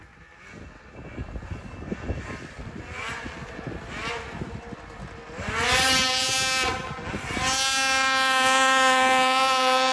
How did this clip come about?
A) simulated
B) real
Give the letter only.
B